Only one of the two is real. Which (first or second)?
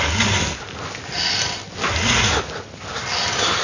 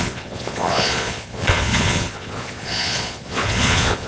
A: first